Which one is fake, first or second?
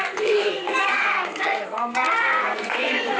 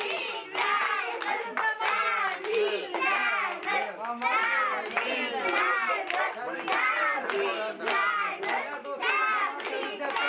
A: first